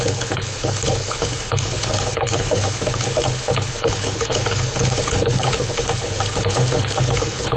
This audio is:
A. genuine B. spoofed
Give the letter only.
B